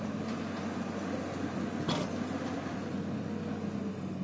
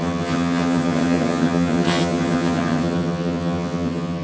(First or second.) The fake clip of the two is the second